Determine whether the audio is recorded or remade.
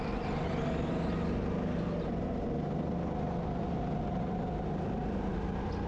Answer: recorded